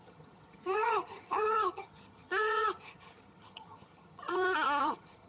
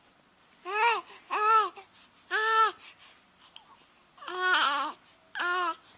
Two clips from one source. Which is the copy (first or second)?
first